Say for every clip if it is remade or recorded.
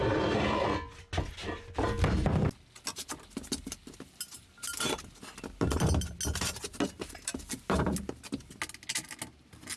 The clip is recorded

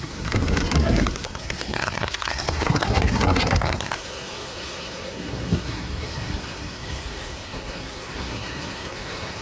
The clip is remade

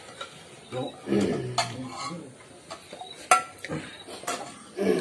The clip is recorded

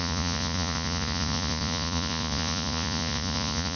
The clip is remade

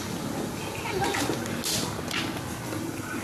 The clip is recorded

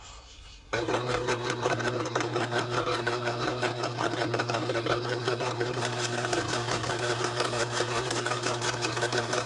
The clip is remade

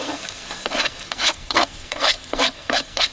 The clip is remade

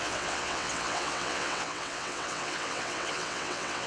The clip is remade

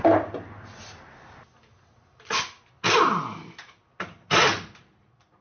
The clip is recorded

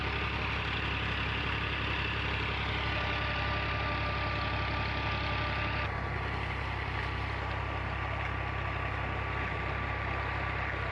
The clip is recorded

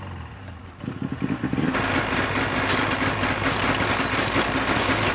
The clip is recorded